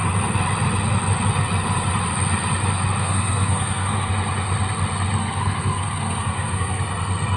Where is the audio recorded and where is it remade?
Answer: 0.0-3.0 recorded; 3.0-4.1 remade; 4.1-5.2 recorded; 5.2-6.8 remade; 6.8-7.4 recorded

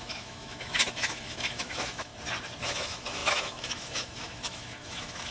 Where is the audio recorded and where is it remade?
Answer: 0.0-2.1 remade; 2.1-2.6 recorded; 2.6-5.3 remade

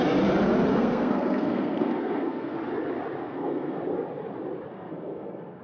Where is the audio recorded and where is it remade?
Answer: 0.0-0.7 recorded; 0.7-2.6 remade; 2.6-3.2 recorded; 3.2-3.8 remade; 3.8-4.7 recorded; 4.7-5.6 remade

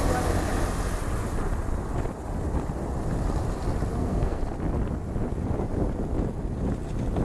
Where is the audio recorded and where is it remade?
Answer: 0.0-3.9 recorded; 3.9-4.4 remade; 4.4-7.2 recorded

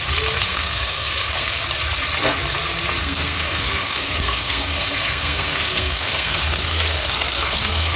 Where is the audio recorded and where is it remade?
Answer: 0.0-0.5 recorded; 0.5-1.6 remade; 1.6-3.0 recorded; 3.0-8.0 remade

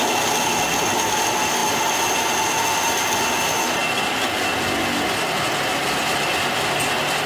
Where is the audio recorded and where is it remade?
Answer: 0.0-7.3 recorded

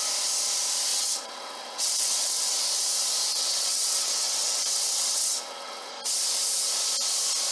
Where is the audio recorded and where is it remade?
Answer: 0.0-0.9 recorded; 0.9-2.6 remade; 2.6-3.3 recorded; 3.3-5.9 remade; 5.9-7.5 recorded